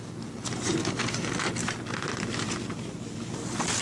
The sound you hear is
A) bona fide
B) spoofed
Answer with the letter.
A